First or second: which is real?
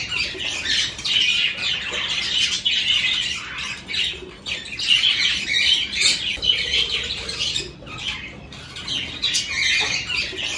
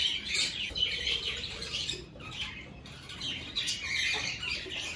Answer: first